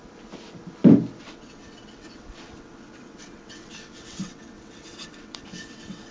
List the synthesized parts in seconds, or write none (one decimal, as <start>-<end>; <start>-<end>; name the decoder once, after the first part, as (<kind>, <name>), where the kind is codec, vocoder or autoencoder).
1.2-6.1 (vocoder, WaveNeXt)